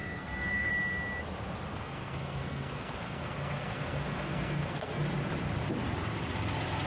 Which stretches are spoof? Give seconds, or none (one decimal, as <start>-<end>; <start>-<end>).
0.0-0.7; 1.7-5.0